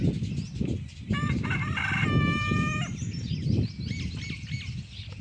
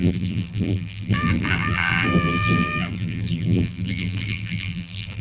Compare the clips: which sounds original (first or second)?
first